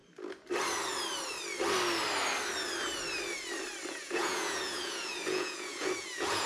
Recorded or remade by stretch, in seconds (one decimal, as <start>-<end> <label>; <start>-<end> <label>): 0.0-3.9 recorded; 3.9-6.5 remade